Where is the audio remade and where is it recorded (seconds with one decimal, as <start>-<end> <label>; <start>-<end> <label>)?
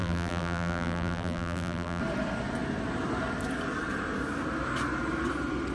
0.0-2.0 remade; 2.0-5.7 recorded